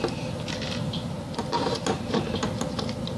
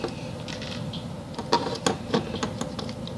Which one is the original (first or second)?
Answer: second